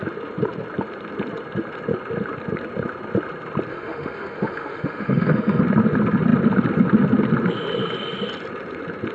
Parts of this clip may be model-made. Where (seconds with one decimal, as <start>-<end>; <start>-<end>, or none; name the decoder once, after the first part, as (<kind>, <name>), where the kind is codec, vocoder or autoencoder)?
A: 3.7-5.6 (autoencoder, DAC-VAE)